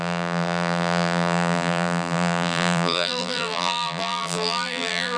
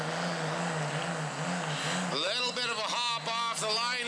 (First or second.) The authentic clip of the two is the second